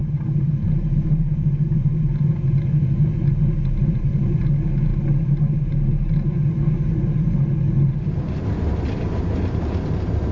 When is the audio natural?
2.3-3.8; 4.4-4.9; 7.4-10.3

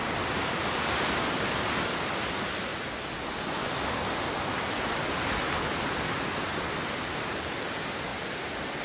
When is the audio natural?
0.0-8.8

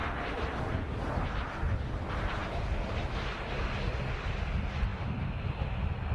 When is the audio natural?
0.6-6.1

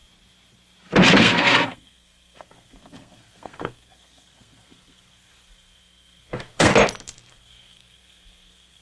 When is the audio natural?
0.0-1.2; 6.7-7.3

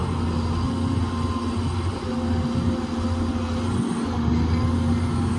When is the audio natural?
0.0-5.4

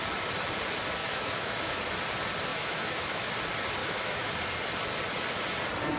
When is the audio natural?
0.0-1.0; 1.8-2.5; 3.3-3.8; 4.3-6.0